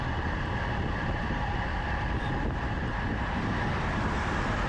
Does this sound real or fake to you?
real